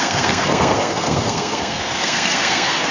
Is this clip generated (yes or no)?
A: yes